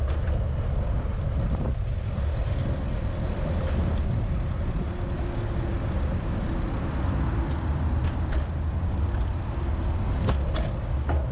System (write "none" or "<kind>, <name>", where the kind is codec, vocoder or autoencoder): none